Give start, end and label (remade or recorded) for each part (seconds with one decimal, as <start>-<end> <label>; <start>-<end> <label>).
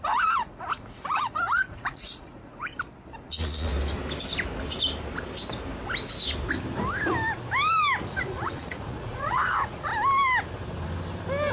0.0-2.7 remade; 2.7-3.3 recorded; 3.3-3.7 remade; 3.7-8.0 recorded; 8.0-9.9 remade; 9.9-11.5 recorded